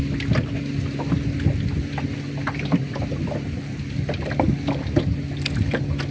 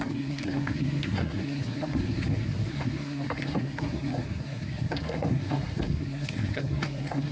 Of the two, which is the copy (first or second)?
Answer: second